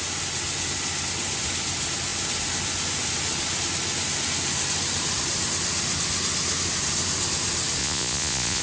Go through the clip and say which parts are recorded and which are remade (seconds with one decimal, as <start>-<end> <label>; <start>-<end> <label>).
0.0-7.8 recorded; 7.8-8.6 remade

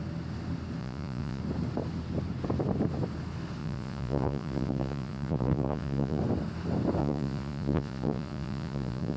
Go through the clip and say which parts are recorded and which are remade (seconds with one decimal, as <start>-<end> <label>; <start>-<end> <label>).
0.0-0.8 recorded; 0.8-1.4 remade; 1.4-3.6 recorded; 3.6-6.2 remade; 6.2-7.0 recorded; 7.0-9.2 remade

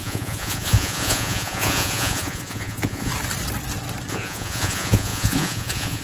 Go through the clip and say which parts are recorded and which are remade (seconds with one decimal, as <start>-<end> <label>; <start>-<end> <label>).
0.0-3.1 remade; 3.1-4.1 recorded; 4.1-6.0 remade

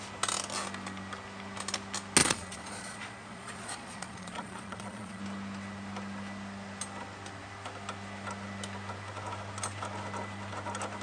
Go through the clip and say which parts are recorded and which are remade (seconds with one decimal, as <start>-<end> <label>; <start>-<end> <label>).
0.0-2.2 recorded; 2.2-5.2 remade; 5.2-11.0 recorded

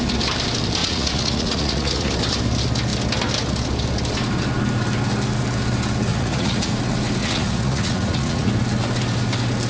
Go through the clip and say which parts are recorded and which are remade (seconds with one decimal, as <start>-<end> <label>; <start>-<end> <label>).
0.0-0.8 recorded; 0.8-2.1 remade; 2.1-6.1 recorded; 6.1-6.7 remade; 6.7-7.2 recorded; 7.2-8.5 remade; 8.5-9.7 recorded